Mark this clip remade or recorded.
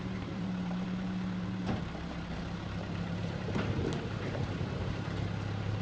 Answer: remade